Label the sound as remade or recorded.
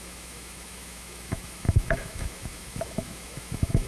remade